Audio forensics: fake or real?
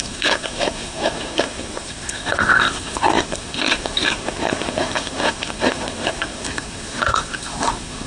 fake